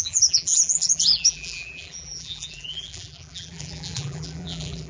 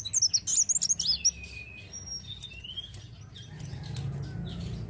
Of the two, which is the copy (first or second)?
first